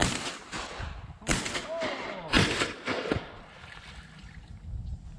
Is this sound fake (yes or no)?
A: no